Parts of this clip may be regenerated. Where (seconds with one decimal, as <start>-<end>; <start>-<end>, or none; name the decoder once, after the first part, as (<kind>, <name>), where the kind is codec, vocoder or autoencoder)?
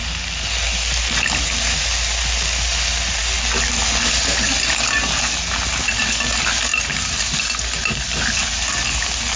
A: none